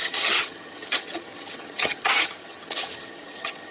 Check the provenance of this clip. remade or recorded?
remade